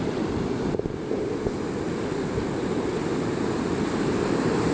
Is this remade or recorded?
recorded